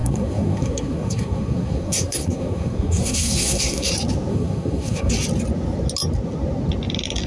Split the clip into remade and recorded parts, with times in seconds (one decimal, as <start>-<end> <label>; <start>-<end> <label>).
0.0-3.9 remade; 3.9-4.3 recorded; 4.3-5.1 remade; 5.1-7.3 recorded